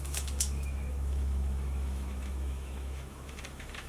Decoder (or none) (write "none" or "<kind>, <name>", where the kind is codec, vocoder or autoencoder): autoencoder, DAC-VAE